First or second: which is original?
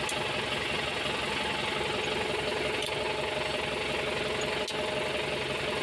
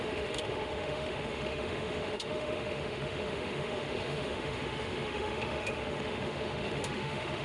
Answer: first